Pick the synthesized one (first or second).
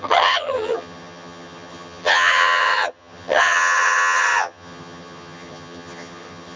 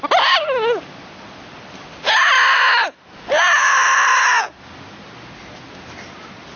first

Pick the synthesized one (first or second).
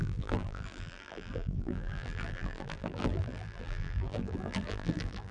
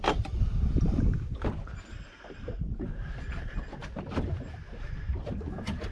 first